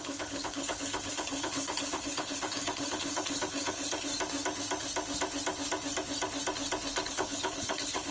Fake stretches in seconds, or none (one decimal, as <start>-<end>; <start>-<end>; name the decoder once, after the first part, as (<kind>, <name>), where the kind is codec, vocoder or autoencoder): 0.0-4.1 (codec, HILCodec); 7.1-8.1